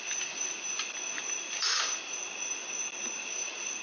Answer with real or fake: real